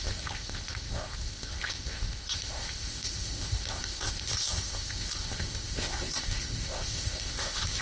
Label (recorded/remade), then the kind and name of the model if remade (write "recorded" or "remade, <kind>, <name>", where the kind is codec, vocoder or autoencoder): remade, codec, ZipCodec